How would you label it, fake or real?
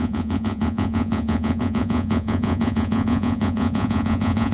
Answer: fake